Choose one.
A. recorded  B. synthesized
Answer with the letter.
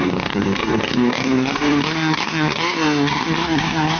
B